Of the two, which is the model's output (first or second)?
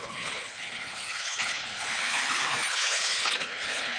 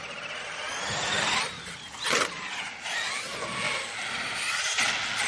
first